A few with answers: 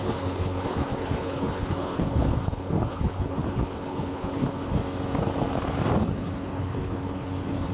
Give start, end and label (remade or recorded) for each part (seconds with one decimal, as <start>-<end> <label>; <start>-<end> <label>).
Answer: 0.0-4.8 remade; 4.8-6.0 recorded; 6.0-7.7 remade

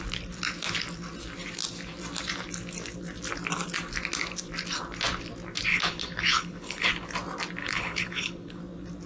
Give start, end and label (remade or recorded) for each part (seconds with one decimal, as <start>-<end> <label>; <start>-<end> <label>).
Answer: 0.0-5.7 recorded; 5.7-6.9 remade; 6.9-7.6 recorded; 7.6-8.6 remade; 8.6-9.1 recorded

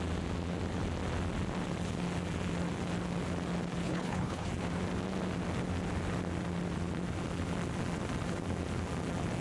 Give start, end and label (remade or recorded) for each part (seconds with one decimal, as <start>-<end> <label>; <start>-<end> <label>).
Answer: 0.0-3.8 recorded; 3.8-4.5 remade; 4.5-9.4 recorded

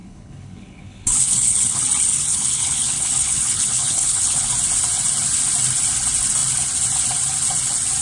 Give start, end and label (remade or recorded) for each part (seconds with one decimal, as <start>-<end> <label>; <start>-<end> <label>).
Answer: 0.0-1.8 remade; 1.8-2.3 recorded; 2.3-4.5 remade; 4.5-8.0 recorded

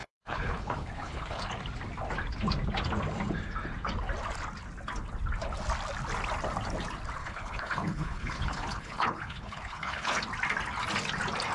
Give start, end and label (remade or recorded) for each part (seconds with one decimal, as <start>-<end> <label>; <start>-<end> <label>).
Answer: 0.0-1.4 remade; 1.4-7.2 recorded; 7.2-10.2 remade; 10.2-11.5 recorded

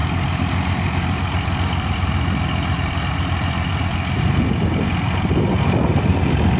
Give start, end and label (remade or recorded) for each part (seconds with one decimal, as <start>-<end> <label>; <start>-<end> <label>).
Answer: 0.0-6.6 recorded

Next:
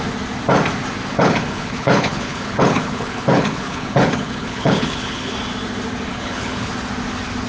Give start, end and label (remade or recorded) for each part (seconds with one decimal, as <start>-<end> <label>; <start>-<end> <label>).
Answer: 0.0-1.1 recorded; 1.1-5.3 remade; 5.3-6.1 recorded; 6.1-6.7 remade; 6.7-7.5 recorded